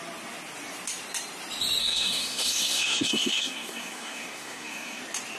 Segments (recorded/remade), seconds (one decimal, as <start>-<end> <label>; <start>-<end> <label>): 0.0-1.8 recorded; 1.8-5.0 remade; 5.0-5.4 recorded